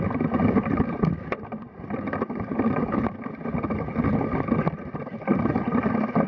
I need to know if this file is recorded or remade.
recorded